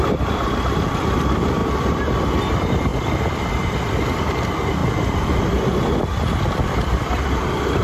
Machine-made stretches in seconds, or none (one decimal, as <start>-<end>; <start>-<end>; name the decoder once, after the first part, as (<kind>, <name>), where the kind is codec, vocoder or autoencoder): 0.0-1.6 (vocoder, BigVGAN v2); 2.3-7.8